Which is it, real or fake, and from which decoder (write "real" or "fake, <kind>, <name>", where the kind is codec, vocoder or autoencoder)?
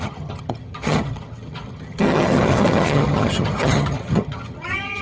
fake, vocoder, HiFi-GAN